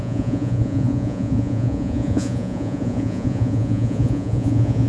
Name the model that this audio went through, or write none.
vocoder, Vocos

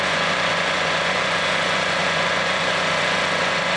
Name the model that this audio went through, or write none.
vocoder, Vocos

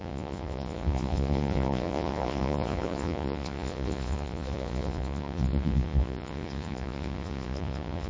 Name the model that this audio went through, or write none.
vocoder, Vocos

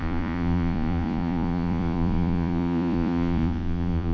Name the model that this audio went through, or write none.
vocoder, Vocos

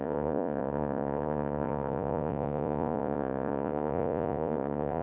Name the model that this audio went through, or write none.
vocoder, Vocos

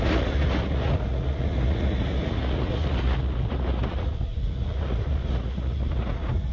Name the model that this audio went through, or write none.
vocoder, Vocos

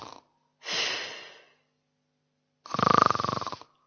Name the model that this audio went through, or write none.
none